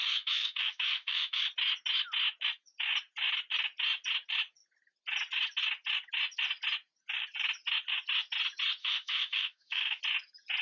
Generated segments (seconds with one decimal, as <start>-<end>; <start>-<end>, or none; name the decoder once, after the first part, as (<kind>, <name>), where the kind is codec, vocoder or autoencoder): 0.0-1.4 (autoencoder, DAC-VAE); 8.8-10.0